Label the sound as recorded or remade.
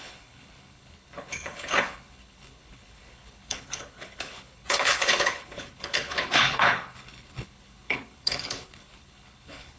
remade